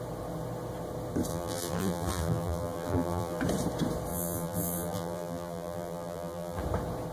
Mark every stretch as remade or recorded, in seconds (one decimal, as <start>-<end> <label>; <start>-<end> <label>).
0.0-1.3 recorded; 1.3-3.4 remade; 3.4-4.1 recorded; 4.1-6.6 remade; 6.6-7.1 recorded